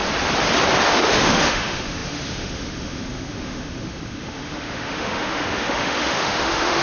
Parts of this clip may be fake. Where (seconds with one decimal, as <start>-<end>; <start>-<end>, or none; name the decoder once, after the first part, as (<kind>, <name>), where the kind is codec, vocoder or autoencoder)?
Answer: 0.8-6.8 (autoencoder, DAC-VAE)